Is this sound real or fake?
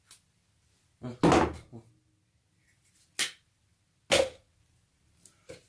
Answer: real